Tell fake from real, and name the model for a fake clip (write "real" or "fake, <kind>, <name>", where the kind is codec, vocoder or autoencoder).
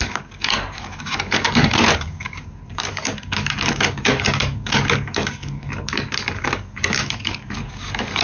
fake, codec, DAC